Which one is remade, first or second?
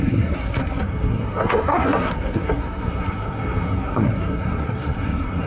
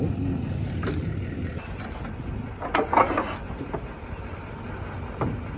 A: first